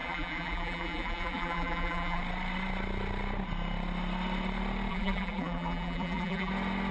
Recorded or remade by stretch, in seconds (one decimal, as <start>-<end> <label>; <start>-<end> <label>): 0.0-2.2 remade; 2.2-4.9 recorded; 4.9-6.5 remade; 6.5-6.9 recorded